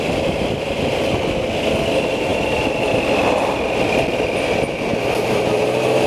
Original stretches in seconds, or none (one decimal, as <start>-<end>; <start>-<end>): 0.0-6.1